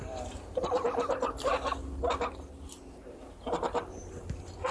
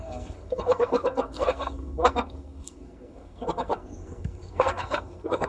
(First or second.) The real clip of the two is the first